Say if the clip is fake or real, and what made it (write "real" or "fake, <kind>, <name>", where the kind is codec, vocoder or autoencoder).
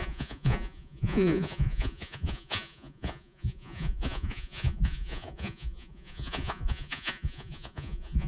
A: fake, vocoder, Vocos